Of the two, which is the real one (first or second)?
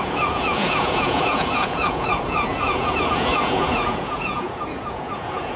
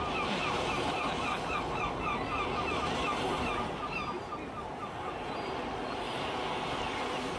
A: second